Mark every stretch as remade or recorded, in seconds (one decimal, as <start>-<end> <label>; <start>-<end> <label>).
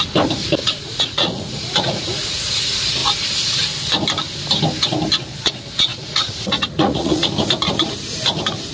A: 0.0-0.6 recorded; 0.6-2.5 remade; 2.5-5.9 recorded; 5.9-7.3 remade; 7.3-8.7 recorded